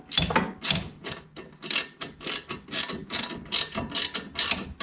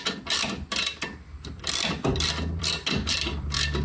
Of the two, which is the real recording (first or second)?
first